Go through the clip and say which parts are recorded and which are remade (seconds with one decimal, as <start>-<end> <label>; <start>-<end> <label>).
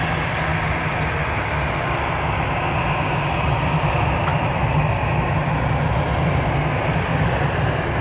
0.0-8.0 recorded